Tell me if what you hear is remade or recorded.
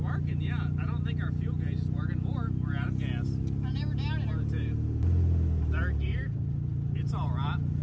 recorded